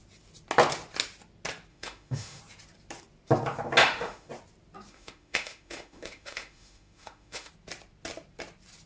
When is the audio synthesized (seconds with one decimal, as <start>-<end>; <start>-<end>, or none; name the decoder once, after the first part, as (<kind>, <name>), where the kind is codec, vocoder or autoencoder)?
1.7-2.4 (autoencoder, DAC-VAE); 3.8-4.3; 4.9-7.5